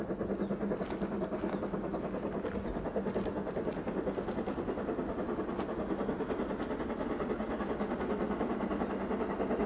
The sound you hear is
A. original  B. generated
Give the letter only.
A